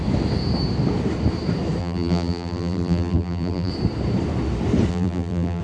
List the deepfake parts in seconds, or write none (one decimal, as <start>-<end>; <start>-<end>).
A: 1.8-3.7; 4.9-5.6